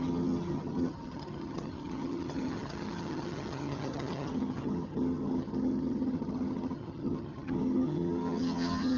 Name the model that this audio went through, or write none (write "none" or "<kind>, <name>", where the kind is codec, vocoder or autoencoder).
vocoder, HiFi-GAN